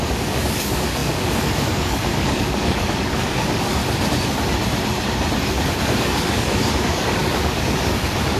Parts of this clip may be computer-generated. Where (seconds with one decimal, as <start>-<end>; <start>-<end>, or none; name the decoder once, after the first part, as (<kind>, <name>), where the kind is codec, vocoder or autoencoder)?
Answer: 0.0-3.8 (codec, DAC); 5.8-8.4